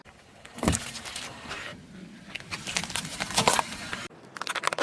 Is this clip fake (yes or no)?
no